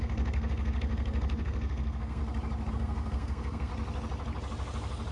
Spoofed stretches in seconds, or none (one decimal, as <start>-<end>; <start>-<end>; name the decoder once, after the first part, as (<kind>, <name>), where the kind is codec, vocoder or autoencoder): 0.0-2.2 (codec, SNAC); 2.7-3.7